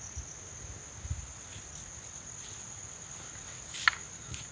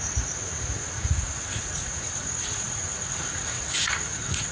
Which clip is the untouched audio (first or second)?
first